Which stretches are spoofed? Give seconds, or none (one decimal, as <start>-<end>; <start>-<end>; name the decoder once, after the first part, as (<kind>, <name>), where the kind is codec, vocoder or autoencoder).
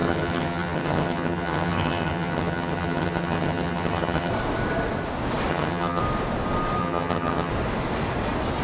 0.0-4.3 (vocoder, HiFi-GAN); 5.5-6.0; 6.8-7.5